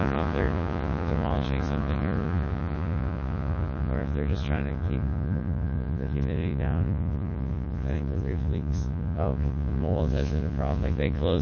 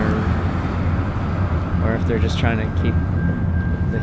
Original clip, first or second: second